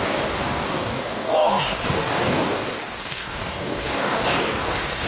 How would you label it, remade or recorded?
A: remade